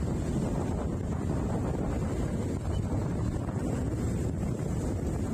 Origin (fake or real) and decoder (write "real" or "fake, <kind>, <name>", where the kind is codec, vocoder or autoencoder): real